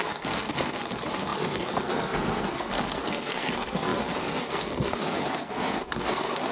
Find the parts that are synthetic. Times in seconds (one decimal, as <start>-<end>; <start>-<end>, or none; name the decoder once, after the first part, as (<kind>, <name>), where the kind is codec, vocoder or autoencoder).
0.0-6.5 (codec, SNAC)